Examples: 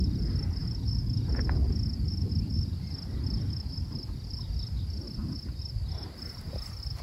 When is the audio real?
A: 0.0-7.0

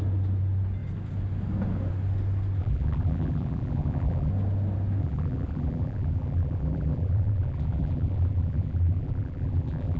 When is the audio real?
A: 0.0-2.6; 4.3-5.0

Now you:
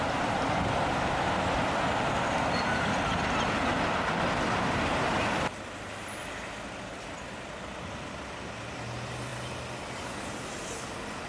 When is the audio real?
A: 0.0-11.3

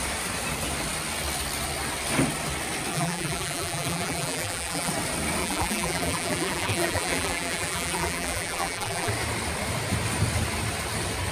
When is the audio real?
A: 0.0-2.9; 4.9-5.4; 9.1-11.3

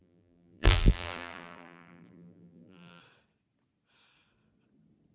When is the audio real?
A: 3.0-5.1

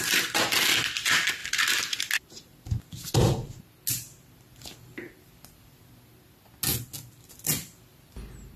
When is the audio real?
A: 0.0-1.4; 2.0-8.6

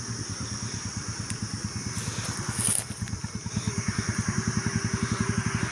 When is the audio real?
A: 0.0-5.7

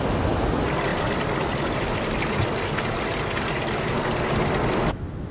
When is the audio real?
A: 0.0-0.9; 2.3-3.1; 4.8-5.3